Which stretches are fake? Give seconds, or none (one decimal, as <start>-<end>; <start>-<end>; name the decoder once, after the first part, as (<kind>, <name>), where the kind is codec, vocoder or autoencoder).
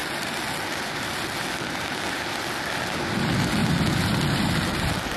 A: 3.1-5.2 (vocoder, BigVGAN v2)